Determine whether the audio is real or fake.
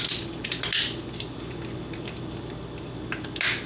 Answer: real